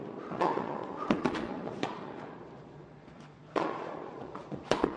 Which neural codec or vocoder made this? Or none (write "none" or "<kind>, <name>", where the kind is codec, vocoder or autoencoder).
vocoder, Vocos